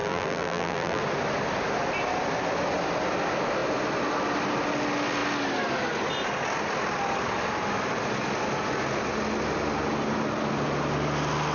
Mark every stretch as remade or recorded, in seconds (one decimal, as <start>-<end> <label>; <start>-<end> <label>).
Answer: 0.0-1.0 remade; 1.0-11.5 recorded